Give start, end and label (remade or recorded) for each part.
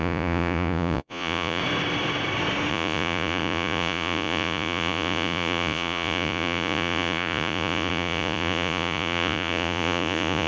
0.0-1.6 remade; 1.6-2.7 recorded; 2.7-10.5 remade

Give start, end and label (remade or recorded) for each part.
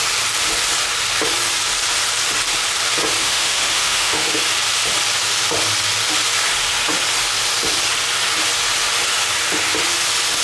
0.0-3.2 recorded; 3.2-4.4 remade; 4.4-10.4 recorded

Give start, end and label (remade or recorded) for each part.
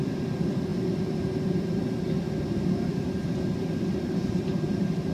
0.0-5.1 remade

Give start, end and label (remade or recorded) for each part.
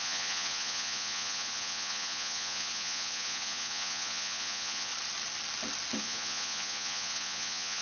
0.0-4.9 remade; 4.9-6.0 recorded; 6.0-7.8 remade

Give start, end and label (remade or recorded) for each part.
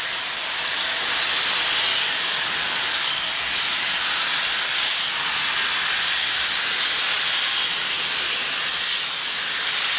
0.0-1.9 recorded; 1.9-3.3 remade; 3.3-10.0 recorded